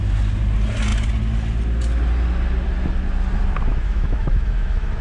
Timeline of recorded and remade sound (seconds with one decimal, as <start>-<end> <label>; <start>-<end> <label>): 0.0-3.7 recorded; 3.7-5.0 remade